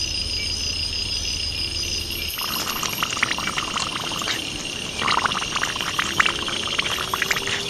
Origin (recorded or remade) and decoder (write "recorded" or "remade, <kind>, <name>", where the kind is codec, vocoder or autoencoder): recorded